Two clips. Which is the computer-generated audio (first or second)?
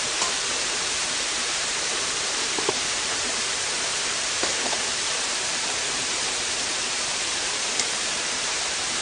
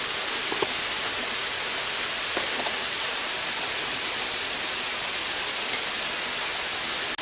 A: first